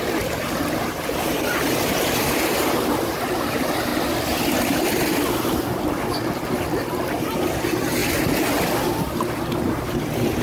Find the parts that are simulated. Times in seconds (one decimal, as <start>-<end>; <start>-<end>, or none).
0.0-3.9; 7.6-8.0; 9.5-10.4

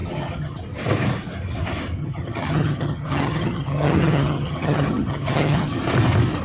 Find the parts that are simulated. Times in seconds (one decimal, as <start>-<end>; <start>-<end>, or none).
0.0-0.6; 2.0-5.8

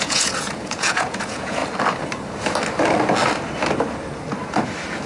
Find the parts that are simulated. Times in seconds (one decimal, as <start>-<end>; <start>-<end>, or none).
0.0-1.6

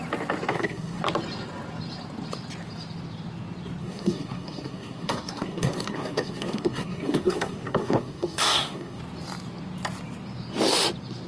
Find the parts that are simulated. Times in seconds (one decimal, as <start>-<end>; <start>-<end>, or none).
0.5-1.0; 3.8-9.0

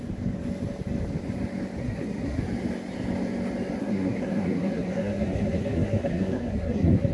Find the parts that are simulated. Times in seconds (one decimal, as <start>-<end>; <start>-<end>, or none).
1.8-2.4; 3.8-7.1

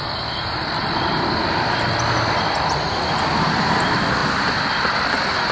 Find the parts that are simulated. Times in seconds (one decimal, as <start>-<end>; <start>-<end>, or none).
none

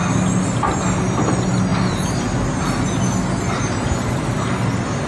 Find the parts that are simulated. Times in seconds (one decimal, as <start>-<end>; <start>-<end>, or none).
none

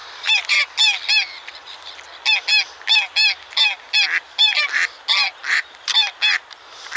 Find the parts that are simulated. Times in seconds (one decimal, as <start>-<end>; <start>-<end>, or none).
0.0-0.7; 5.4-6.1